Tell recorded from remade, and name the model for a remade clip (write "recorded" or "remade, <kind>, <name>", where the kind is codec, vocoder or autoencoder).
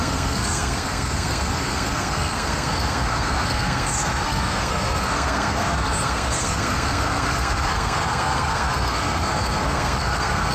remade, codec, SNAC